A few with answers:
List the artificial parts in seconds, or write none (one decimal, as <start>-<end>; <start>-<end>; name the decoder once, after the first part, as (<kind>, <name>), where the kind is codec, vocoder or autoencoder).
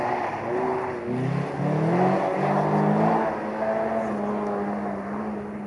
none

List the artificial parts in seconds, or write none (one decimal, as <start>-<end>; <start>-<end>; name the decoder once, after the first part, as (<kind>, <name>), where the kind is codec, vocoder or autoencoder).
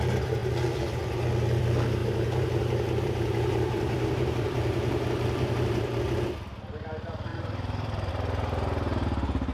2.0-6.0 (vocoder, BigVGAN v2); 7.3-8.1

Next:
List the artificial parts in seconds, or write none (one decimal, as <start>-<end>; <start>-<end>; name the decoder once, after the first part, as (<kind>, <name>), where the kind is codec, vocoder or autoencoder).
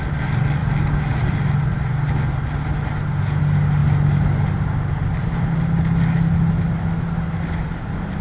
none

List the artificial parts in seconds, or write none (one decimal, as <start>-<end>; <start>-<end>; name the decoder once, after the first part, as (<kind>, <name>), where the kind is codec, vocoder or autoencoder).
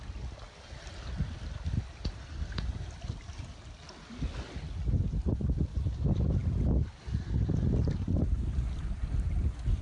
none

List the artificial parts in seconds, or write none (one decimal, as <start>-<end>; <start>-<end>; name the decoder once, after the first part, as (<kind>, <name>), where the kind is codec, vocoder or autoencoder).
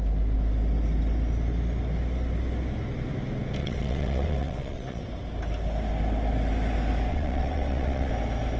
3.6-5.0 (vocoder, WaveNeXt); 7.1-8.1